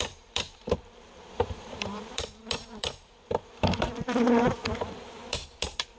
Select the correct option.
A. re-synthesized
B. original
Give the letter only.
A